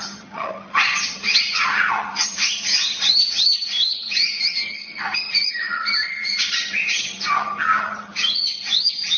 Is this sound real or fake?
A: fake